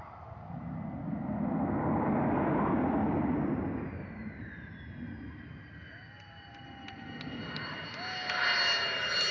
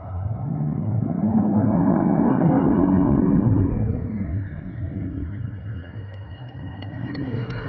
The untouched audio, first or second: first